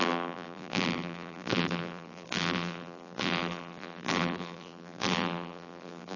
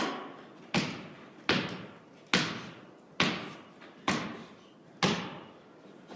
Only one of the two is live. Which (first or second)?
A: second